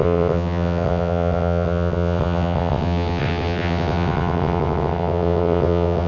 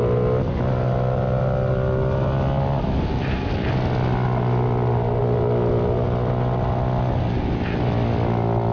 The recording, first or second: second